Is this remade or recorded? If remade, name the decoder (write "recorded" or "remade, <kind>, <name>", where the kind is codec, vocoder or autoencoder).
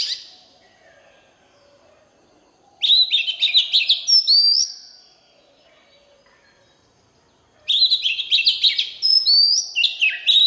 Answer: recorded